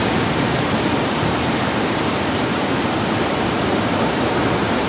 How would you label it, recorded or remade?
remade